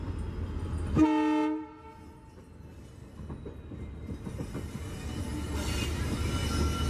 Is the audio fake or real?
real